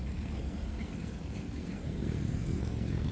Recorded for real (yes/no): no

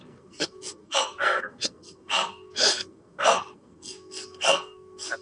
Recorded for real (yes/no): no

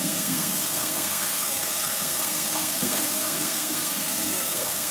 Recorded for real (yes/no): no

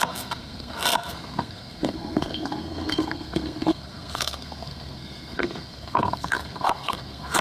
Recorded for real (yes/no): no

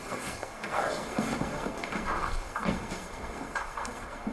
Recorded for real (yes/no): no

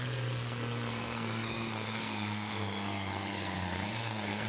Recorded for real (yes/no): no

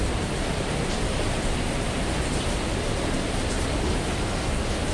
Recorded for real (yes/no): yes